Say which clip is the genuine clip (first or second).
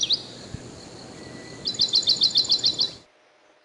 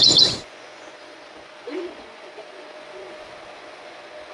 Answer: first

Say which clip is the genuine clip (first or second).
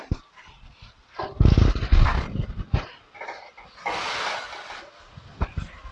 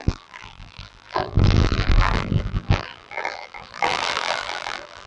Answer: first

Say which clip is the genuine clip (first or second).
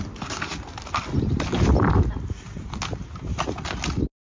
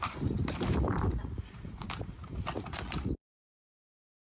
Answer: first